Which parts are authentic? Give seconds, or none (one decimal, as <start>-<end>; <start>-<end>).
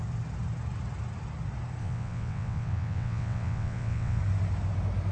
0.0-1.8; 4.2-5.1